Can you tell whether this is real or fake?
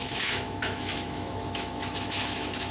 fake